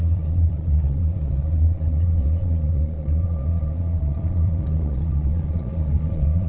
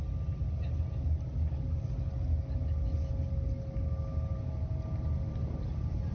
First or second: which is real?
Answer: second